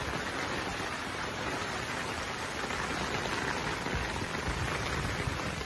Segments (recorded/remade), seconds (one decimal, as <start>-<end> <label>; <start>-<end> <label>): 0.0-0.7 recorded; 0.7-1.7 remade; 1.7-5.7 recorded